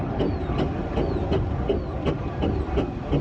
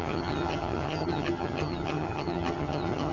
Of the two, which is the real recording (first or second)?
first